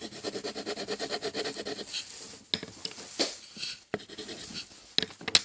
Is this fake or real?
real